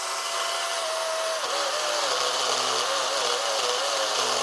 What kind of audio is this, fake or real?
real